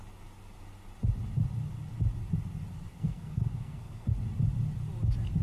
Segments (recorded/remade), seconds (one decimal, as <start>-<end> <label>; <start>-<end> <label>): 0.0-2.9 recorded; 2.9-4.1 remade; 4.1-5.4 recorded